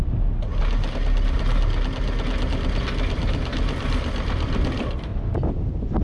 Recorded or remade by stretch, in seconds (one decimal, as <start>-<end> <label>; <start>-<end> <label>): 0.0-0.5 remade; 0.5-2.5 recorded; 2.5-5.1 remade; 5.1-5.6 recorded; 5.6-6.0 remade